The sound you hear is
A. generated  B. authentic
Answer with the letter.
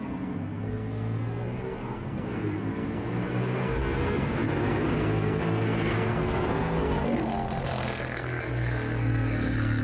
A